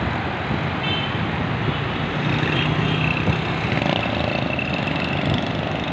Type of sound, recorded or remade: recorded